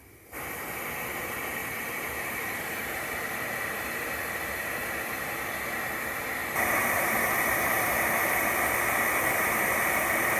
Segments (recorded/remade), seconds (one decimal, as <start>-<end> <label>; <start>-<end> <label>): 0.0-1.6 recorded; 1.6-3.1 remade; 3.1-6.4 recorded; 6.4-7.9 remade; 7.9-10.4 recorded